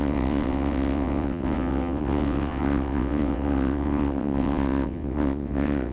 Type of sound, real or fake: fake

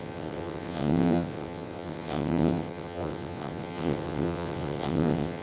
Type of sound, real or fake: fake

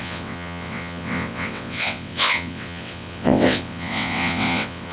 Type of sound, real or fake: fake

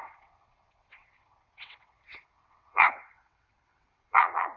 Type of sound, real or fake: fake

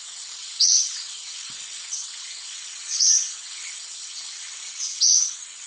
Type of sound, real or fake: fake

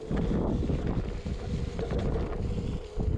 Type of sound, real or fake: real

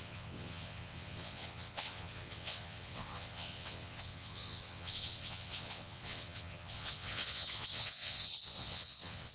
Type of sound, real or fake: fake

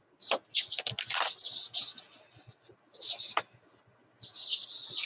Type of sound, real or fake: real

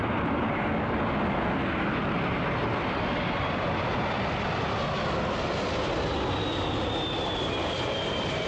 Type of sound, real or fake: real